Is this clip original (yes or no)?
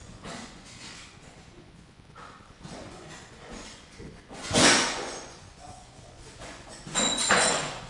no